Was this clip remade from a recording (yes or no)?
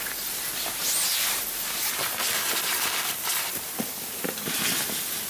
no